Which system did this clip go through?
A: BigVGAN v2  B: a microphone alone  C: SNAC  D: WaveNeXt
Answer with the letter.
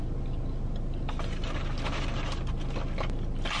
B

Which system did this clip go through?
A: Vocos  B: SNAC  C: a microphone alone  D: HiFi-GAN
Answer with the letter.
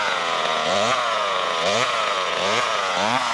A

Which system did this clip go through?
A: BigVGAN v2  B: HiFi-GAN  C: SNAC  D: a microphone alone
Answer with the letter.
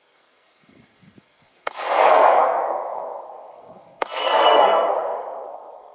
C